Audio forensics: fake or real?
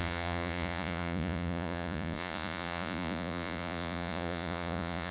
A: fake